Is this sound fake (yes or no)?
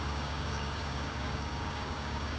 yes